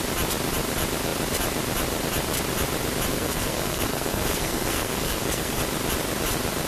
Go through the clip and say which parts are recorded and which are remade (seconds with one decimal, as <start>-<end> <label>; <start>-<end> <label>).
0.0-3.1 recorded; 3.1-5.6 remade; 5.6-6.7 recorded